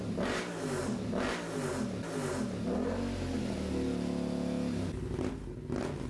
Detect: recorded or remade recorded